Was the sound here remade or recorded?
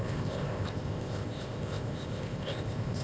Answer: remade